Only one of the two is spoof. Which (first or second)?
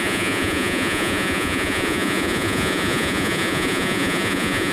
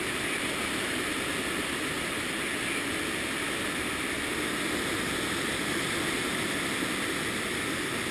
first